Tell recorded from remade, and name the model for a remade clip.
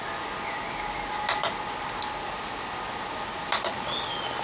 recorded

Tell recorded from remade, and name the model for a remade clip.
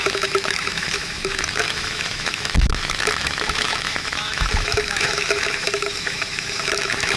remade, autoencoder, DAC-VAE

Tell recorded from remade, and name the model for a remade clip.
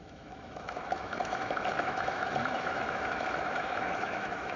remade, autoencoder, DAC-VAE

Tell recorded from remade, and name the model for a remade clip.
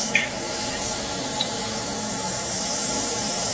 remade, autoencoder, DAC-VAE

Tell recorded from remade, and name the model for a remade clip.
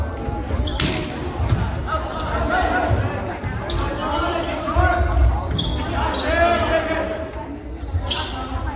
recorded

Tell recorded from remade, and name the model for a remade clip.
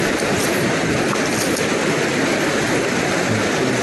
recorded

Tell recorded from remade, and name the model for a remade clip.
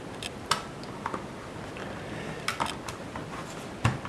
recorded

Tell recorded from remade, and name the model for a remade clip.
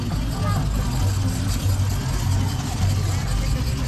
recorded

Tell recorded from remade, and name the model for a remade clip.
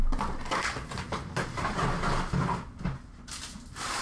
recorded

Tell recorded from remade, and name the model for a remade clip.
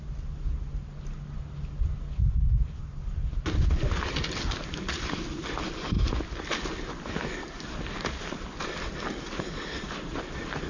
recorded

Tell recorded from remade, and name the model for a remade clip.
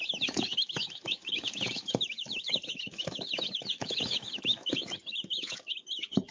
remade, autoencoder, DAC-VAE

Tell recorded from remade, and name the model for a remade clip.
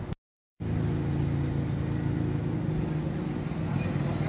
recorded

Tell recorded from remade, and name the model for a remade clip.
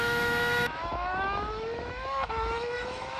remade, autoencoder, DAC-VAE